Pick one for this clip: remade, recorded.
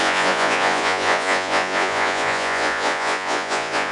remade